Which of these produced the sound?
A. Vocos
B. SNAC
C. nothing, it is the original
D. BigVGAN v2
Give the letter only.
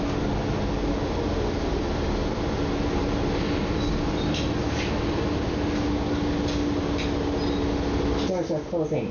C